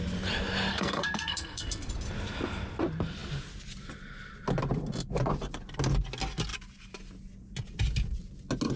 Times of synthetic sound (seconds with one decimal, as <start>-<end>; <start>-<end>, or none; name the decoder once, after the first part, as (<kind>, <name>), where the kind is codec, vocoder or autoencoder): 0.7-1.9 (codec, SNAC)